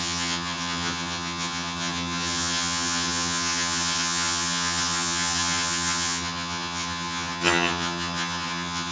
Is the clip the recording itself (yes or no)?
no